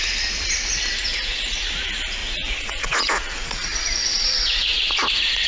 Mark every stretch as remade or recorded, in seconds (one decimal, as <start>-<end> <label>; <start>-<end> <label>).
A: 0.0-1.1 recorded; 1.1-1.6 remade; 1.6-2.2 recorded; 2.2-5.5 remade

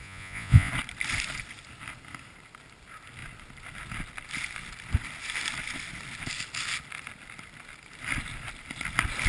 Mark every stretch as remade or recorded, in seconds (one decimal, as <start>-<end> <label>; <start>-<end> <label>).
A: 0.0-0.7 remade; 0.7-9.3 recorded

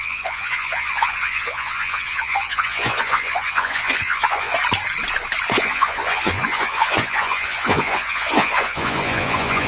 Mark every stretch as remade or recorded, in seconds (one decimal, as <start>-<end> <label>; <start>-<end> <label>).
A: 0.0-4.5 remade; 4.5-5.6 recorded; 5.6-9.7 remade